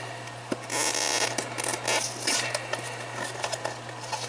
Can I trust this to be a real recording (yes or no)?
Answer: yes